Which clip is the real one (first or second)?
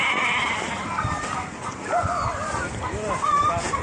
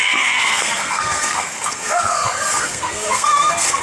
first